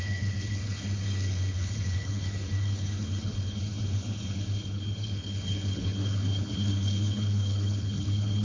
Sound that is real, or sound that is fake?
fake